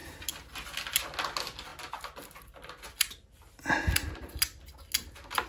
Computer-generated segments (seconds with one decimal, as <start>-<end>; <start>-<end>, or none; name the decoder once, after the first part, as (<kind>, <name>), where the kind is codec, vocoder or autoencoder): none